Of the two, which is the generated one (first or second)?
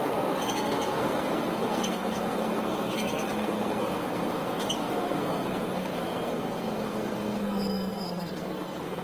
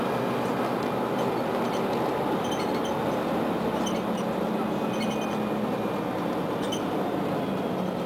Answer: first